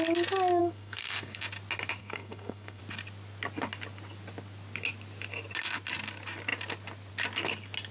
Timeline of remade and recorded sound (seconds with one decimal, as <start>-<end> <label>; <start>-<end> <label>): 0.0-0.6 recorded; 0.6-1.4 remade; 1.4-2.0 recorded; 2.0-2.8 remade; 2.8-7.9 recorded